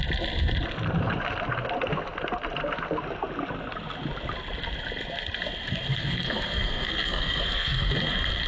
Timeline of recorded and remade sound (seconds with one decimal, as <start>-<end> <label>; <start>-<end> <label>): 0.0-6.0 recorded; 6.0-7.9 remade; 7.9-8.5 recorded

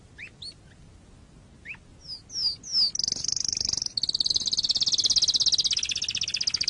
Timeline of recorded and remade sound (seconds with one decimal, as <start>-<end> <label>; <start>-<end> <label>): 0.0-6.7 recorded

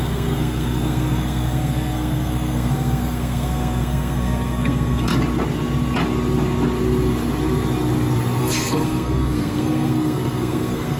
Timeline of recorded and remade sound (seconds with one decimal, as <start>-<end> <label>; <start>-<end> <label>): 0.0-5.1 remade; 5.1-8.4 recorded; 8.4-11.0 remade

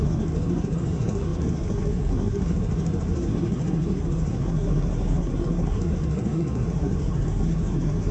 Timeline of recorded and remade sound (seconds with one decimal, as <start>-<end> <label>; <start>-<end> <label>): 0.0-8.1 remade